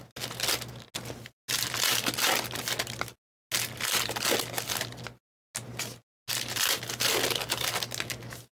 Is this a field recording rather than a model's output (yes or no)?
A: yes